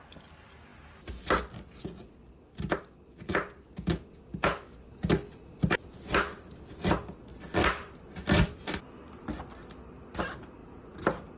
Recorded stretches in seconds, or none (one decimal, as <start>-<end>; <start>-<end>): 0.0-11.4